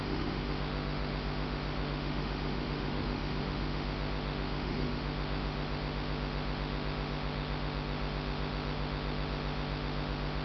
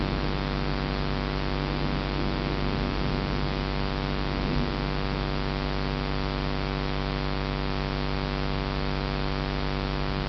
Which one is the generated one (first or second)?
first